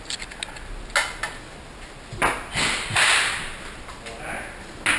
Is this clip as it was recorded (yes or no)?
yes